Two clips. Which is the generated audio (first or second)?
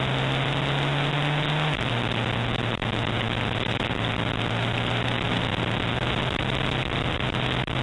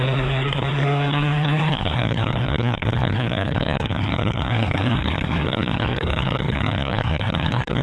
second